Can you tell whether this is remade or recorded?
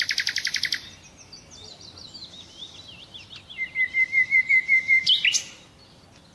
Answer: recorded